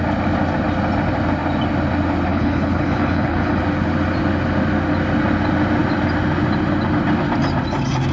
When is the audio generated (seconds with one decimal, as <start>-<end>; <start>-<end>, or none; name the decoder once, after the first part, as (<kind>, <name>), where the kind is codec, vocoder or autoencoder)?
2.3-3.6 (codec, HILCodec)